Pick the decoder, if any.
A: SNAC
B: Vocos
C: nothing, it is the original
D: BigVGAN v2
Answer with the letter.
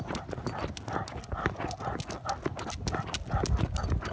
C